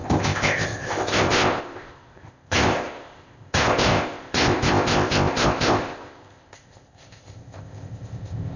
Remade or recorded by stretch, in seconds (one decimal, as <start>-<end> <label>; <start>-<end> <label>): 0.0-8.6 remade